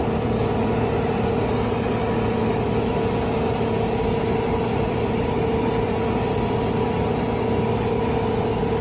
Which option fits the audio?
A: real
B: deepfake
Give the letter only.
A